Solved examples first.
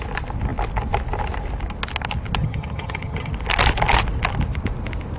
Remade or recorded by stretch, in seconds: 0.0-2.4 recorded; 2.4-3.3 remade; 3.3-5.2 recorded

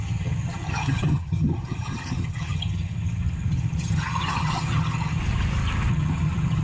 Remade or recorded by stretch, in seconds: 0.0-5.2 remade; 5.2-5.9 recorded; 5.9-6.6 remade

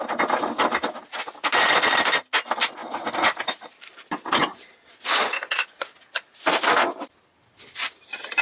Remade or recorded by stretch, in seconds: 0.0-8.4 recorded

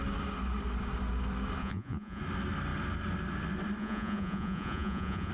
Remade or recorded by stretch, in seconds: 0.0-1.6 recorded; 1.6-2.2 remade; 2.2-3.8 recorded; 3.8-5.3 remade

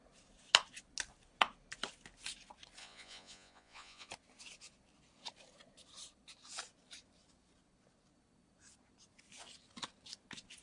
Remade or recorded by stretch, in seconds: 0.0-2.8 recorded; 2.8-4.1 remade; 4.1-10.6 recorded

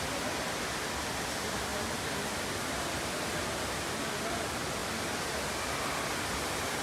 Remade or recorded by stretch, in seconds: 0.0-6.8 recorded

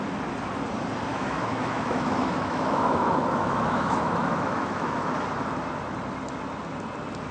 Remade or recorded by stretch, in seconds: 0.0-1.1 recorded; 1.1-5.0 remade; 5.0-7.3 recorded

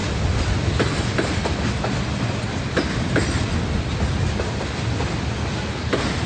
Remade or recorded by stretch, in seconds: 0.0-6.3 recorded